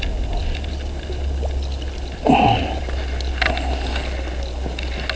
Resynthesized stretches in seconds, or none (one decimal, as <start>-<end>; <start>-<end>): none